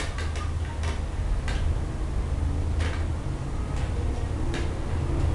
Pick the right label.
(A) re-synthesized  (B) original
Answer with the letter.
B